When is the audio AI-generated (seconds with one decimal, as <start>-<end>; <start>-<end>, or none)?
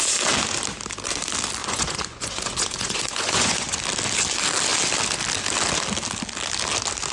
1.6-3.8